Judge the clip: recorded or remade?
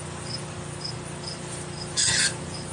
recorded